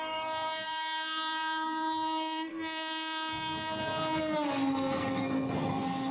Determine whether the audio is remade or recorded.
remade